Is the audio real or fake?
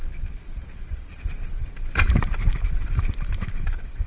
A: real